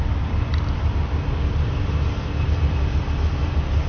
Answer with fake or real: real